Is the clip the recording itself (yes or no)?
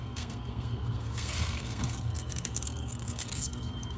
no